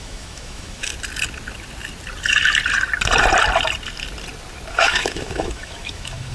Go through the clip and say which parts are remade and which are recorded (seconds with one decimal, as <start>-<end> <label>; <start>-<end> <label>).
0.0-0.9 remade; 0.9-4.7 recorded; 4.7-6.3 remade